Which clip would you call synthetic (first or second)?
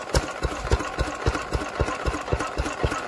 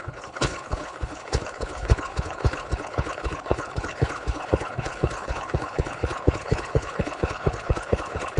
second